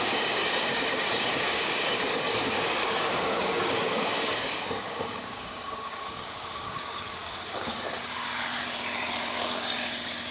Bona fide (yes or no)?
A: no